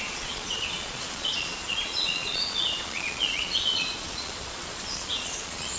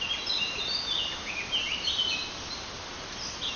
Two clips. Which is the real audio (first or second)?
second